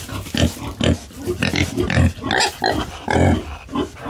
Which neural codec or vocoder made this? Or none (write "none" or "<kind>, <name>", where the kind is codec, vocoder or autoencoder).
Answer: none